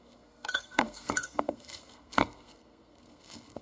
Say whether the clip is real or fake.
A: fake